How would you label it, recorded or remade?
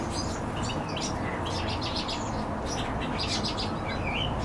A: recorded